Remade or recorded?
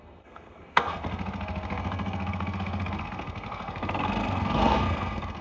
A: remade